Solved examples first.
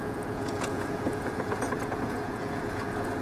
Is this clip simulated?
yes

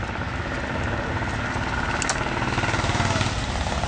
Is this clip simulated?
no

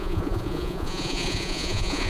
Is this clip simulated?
yes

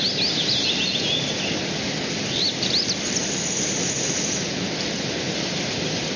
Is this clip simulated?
no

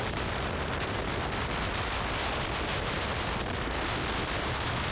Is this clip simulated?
no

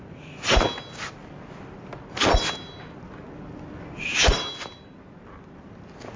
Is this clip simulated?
no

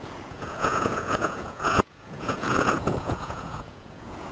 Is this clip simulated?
yes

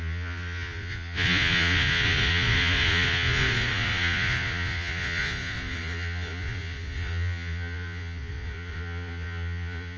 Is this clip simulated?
yes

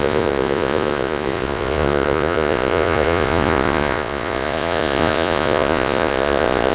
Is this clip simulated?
yes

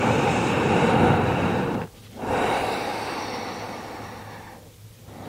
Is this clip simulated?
no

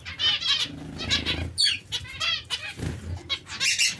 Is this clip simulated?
no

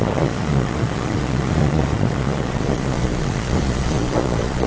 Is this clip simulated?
yes